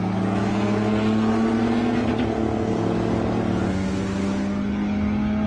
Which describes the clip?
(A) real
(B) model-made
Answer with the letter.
A